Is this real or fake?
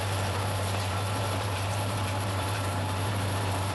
fake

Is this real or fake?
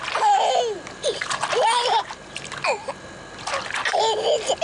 real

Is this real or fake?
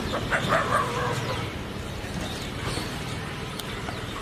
fake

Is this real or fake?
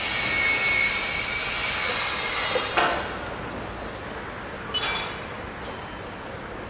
real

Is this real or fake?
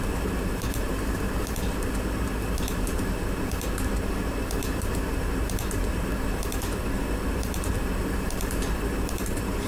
fake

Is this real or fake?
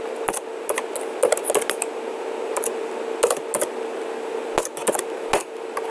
real